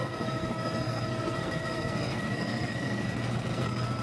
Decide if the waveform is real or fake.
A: fake